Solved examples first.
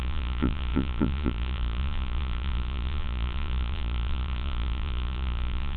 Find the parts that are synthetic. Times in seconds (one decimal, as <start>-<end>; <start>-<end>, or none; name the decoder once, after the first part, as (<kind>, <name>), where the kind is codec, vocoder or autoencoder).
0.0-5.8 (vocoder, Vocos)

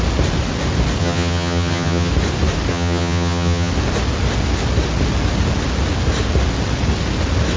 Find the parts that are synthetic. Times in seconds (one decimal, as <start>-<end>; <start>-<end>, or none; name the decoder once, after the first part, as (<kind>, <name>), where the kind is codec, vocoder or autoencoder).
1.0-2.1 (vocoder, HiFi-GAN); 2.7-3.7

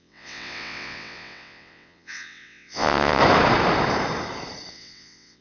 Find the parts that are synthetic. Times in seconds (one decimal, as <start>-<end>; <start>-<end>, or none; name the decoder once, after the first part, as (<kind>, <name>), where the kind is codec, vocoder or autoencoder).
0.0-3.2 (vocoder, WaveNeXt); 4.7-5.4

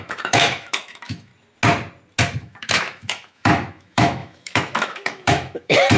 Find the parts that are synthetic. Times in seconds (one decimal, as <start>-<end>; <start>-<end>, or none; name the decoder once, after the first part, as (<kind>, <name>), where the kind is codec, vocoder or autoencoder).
0.0-1.3 (autoencoder, DAC-VAE); 2.4-6.0

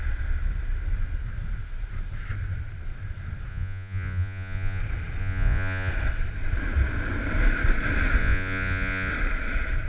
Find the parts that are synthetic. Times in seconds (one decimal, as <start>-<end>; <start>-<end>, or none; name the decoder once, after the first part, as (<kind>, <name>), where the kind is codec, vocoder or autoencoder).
3.5-4.8 (vocoder, Vocos); 5.2-5.9; 8.2-9.1

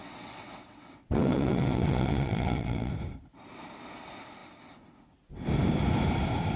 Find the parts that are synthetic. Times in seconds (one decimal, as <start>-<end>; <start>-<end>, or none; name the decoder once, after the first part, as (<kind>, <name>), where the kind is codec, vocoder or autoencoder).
0.0-2.9 (vocoder, WaveNeXt)